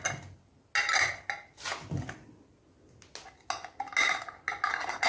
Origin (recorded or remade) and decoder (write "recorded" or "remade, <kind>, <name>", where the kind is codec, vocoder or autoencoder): recorded